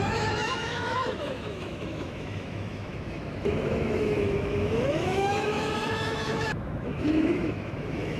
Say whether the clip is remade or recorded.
remade